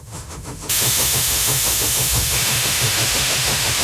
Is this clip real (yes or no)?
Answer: no